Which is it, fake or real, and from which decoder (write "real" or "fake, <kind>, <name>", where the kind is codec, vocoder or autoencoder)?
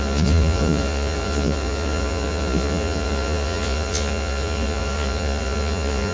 fake, vocoder, Vocos